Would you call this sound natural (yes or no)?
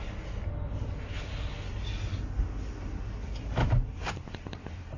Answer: yes